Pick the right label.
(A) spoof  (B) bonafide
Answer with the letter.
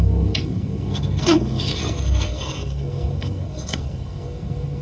A